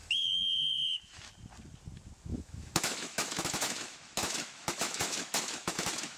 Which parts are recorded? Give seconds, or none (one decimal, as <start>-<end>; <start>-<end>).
1.3-2.3